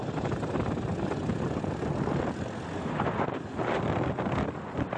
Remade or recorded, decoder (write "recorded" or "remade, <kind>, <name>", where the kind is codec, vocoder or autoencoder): recorded